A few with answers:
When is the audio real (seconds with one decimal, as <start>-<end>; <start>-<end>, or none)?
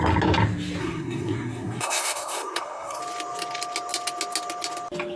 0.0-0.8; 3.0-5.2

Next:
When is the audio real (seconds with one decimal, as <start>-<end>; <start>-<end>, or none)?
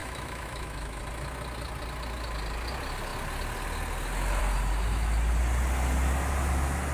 1.0-6.9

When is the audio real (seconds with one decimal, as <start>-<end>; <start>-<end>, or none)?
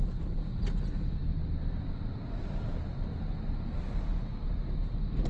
0.0-5.3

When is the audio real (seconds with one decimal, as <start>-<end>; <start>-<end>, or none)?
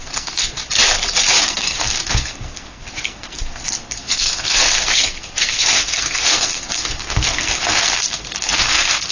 0.6-1.4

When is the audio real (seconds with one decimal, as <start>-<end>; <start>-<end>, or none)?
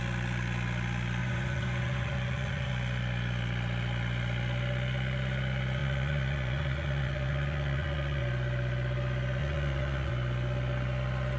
0.0-1.2; 2.7-5.8; 8.2-9.4; 10.1-11.4